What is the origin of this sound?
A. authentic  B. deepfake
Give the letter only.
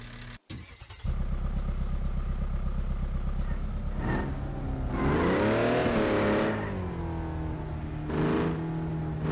A